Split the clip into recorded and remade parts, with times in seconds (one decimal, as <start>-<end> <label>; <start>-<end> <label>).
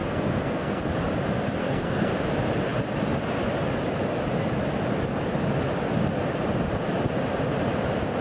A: 0.0-0.8 remade; 0.8-1.6 recorded; 1.6-2.1 remade; 2.1-8.2 recorded